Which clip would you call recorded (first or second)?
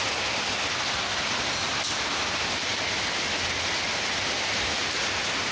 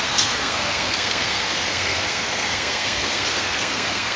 first